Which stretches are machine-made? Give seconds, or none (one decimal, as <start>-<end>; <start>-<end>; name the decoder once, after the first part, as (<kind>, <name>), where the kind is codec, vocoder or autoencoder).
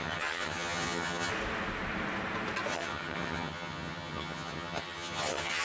0.0-1.3 (vocoder, HiFi-GAN); 2.7-5.6